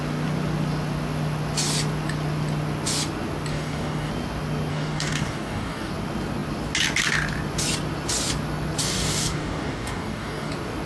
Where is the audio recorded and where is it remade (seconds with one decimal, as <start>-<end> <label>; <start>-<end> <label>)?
0.0-3.5 recorded; 3.5-4.1 remade; 4.1-4.7 recorded; 4.7-5.9 remade; 5.9-8.8 recorded; 8.8-10.5 remade; 10.5-10.9 recorded